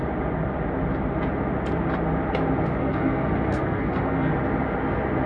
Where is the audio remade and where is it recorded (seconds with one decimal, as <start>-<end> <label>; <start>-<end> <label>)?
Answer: 0.0-2.8 recorded; 2.8-4.3 remade; 4.3-5.3 recorded